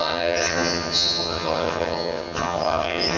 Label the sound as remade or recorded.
remade